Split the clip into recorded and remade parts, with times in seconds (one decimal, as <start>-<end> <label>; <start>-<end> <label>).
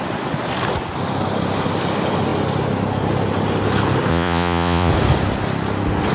0.0-4.1 recorded; 4.1-4.9 remade; 4.9-6.1 recorded